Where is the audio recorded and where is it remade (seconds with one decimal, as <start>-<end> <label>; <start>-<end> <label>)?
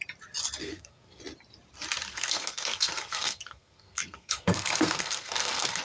0.0-0.6 recorded; 0.6-1.2 remade; 1.2-2.1 recorded; 2.1-5.8 remade